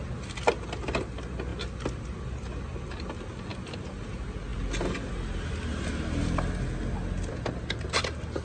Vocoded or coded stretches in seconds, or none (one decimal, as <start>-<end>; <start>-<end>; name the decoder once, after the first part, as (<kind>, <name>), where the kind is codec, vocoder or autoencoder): none